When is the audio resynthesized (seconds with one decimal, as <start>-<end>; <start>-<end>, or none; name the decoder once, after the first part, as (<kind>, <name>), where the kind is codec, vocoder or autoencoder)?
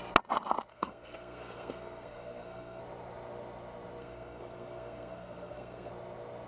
0.7-2.8 (codec, SNAC); 4.0-5.9